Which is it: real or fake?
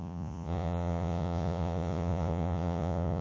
fake